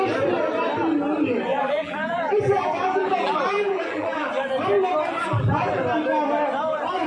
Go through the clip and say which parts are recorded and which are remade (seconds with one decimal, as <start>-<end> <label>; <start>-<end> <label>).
0.0-1.5 recorded; 1.5-4.3 remade; 4.3-5.2 recorded; 5.2-5.8 remade; 5.8-7.1 recorded